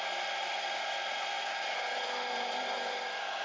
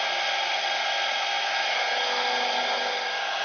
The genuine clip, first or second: second